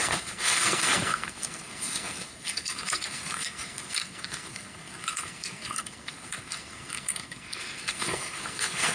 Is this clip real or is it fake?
fake